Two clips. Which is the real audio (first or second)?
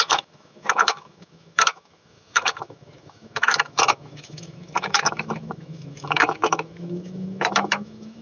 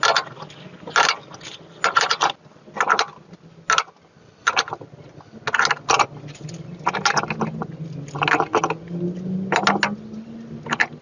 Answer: second